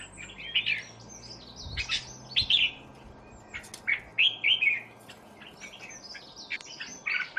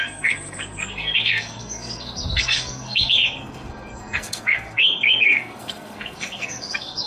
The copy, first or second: second